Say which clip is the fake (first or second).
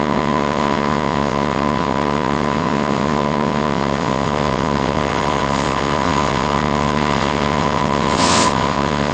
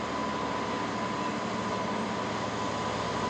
first